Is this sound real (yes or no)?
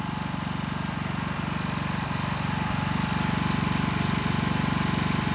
yes